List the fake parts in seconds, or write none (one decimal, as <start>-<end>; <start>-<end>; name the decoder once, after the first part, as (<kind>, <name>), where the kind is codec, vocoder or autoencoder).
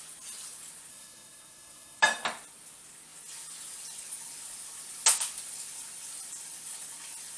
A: 0.9-2.0 (codec, SNAC)